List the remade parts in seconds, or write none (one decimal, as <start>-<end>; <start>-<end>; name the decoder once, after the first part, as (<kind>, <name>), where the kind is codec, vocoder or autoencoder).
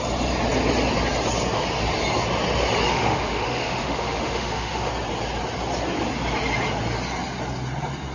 2.9-4.9 (autoencoder, DAC-VAE)